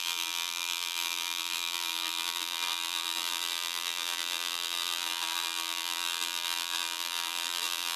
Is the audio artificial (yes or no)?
yes